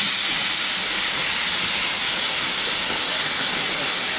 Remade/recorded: recorded